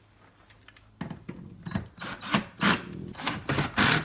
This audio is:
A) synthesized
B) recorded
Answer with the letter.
B